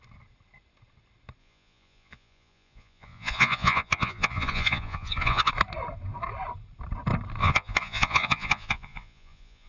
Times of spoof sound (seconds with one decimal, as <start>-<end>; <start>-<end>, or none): 1.4-5.5; 7.4-9.7